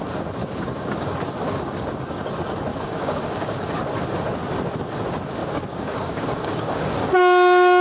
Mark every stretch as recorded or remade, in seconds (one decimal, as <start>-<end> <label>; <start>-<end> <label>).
0.0-0.4 recorded; 0.4-2.2 remade; 2.2-2.7 recorded; 2.7-3.7 remade; 3.7-5.4 recorded; 5.4-7.8 remade